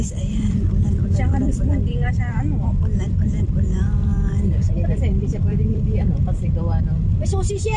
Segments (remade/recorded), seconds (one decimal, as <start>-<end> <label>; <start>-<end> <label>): 0.0-7.8 remade